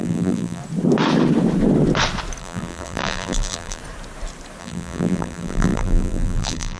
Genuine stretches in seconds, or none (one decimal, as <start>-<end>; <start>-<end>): 0.6-2.4; 3.8-4.6